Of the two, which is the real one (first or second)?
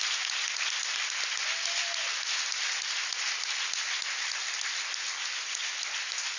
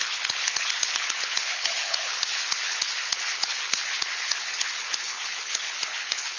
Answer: first